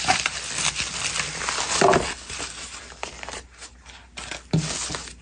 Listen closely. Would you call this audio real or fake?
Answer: real